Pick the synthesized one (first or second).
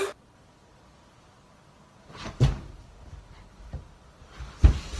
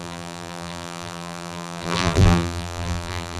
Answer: second